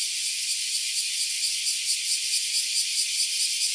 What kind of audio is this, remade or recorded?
recorded